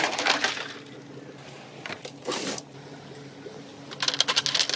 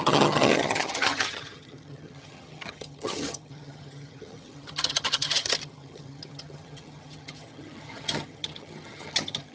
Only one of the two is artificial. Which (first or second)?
second